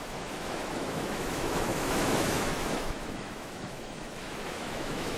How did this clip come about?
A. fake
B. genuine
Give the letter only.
A